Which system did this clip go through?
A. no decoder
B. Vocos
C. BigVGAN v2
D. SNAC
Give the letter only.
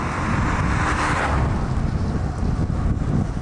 A